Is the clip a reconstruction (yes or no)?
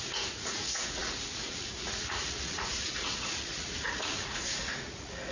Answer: yes